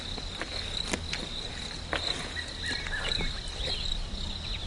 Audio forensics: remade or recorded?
recorded